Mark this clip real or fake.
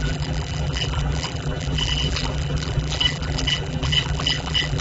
fake